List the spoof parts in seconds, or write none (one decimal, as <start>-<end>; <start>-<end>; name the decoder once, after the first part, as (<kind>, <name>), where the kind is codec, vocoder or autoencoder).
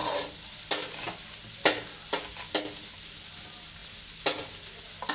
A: none